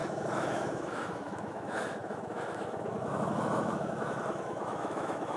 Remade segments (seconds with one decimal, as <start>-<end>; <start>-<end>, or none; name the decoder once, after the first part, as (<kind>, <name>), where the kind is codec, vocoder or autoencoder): 0.0-5.4 (autoencoder, DAC-VAE)